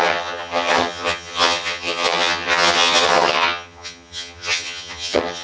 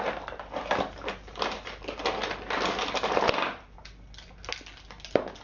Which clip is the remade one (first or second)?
first